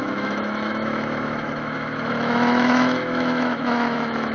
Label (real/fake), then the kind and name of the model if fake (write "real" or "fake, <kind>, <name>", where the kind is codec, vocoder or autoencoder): fake, autoencoder, DAC-VAE